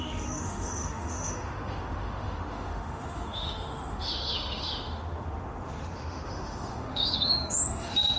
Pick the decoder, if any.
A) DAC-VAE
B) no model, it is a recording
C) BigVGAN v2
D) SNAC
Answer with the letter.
A